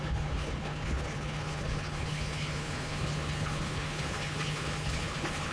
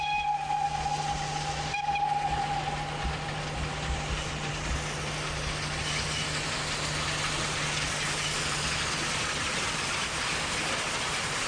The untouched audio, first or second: second